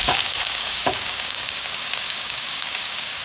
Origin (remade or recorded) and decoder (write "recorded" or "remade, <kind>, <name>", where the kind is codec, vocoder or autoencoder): remade, codec, DAC